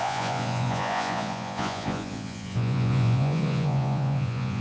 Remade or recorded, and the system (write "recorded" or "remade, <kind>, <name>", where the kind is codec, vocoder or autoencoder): remade, vocoder, Vocos